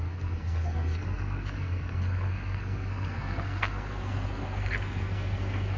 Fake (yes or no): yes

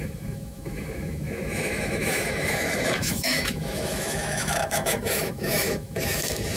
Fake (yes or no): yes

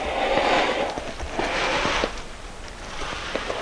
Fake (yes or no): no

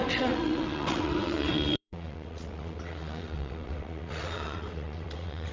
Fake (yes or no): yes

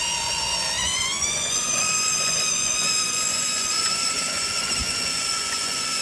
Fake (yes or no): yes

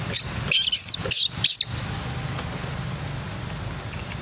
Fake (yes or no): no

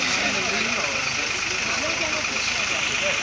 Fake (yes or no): no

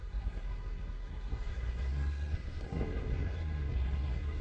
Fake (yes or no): yes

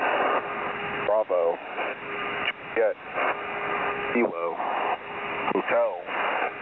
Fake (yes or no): no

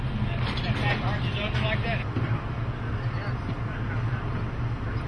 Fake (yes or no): no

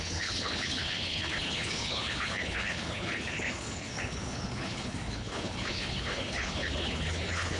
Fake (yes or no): yes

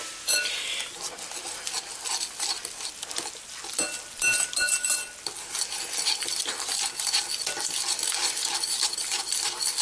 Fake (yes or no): no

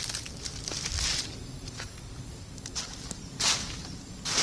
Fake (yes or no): no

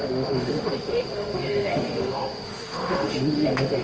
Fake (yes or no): yes